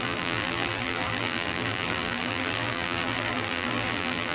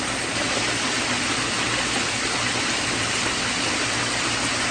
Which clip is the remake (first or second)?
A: first